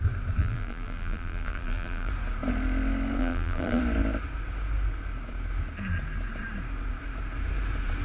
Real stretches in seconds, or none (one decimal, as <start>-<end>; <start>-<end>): 0.0-0.4; 2.1-3.2; 3.8-8.0